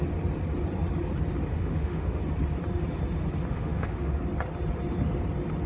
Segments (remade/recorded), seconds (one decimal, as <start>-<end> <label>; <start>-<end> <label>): 0.0-1.5 recorded; 1.5-2.2 remade; 2.2-3.5 recorded; 3.5-4.2 remade; 4.2-5.7 recorded